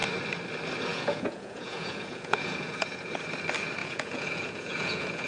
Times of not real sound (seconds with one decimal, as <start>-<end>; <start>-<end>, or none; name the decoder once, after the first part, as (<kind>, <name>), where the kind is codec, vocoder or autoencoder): 0.9-3.1 (vocoder, Vocos); 3.8-5.3